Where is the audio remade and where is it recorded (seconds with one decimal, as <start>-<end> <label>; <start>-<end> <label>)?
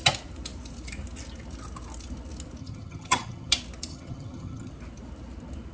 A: 0.0-2.6 recorded; 2.6-3.5 remade; 3.5-3.9 recorded; 3.9-4.7 remade; 4.7-5.7 recorded